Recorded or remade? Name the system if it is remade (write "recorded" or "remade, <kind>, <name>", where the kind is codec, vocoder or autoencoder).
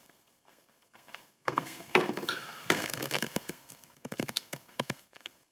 remade, codec, SNAC